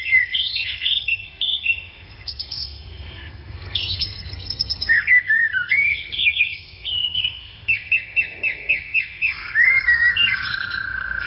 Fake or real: fake